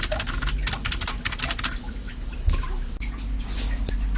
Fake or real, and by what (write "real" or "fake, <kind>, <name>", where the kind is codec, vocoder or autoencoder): real